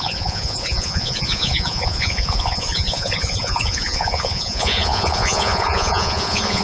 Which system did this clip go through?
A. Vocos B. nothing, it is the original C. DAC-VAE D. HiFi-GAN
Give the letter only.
A